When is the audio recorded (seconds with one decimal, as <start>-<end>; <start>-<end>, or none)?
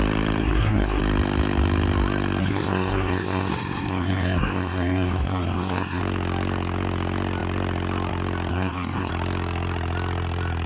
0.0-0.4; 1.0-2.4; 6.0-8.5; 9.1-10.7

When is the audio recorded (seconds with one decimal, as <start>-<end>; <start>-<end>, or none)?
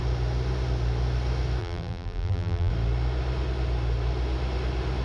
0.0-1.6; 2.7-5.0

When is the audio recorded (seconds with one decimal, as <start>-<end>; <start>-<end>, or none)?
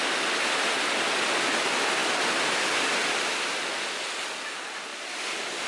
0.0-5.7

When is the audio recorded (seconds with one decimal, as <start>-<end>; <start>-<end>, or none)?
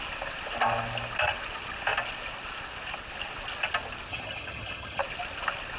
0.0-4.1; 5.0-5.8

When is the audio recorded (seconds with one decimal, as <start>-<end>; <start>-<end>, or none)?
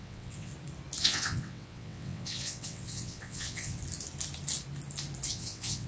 0.5-1.0; 3.8-5.3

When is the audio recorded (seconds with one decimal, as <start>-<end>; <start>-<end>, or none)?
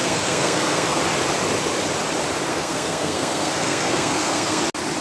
1.0-2.5; 4.6-5.0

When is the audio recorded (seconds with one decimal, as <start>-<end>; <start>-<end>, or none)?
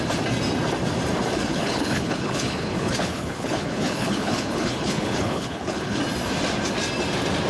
0.0-1.5; 6.0-7.5